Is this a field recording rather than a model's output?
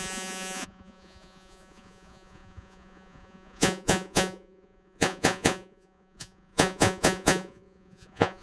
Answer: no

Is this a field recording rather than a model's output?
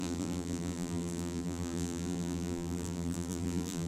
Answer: no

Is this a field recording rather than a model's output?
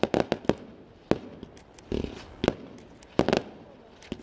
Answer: yes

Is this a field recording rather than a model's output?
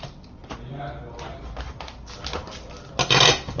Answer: yes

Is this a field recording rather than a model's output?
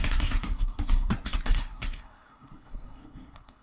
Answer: no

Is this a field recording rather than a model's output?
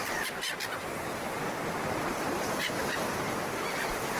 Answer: yes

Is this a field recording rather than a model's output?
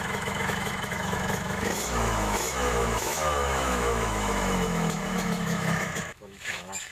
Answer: no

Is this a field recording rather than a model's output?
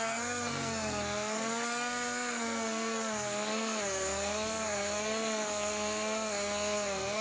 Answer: no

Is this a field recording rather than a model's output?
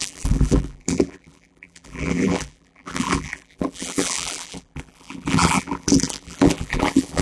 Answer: no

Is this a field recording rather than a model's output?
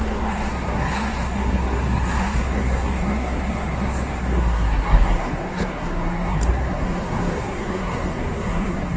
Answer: no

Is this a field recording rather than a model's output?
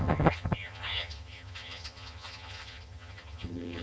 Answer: no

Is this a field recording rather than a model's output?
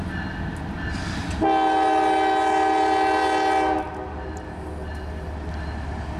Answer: yes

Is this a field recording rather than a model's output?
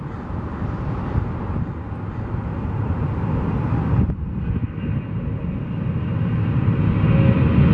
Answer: yes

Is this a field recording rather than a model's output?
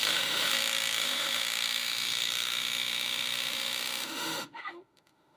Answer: no